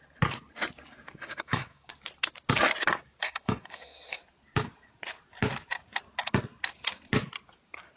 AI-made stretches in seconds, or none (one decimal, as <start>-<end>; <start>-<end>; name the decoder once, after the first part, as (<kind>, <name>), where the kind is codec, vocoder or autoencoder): 1.3-1.9 (autoencoder, DAC-VAE); 3.2-4.2